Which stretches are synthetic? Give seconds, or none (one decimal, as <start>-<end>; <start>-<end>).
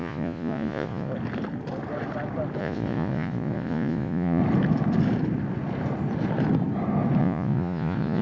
0.0-1.1; 2.6-4.4; 7.2-8.2